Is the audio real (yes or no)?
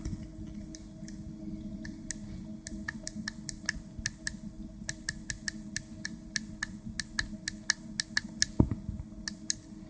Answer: yes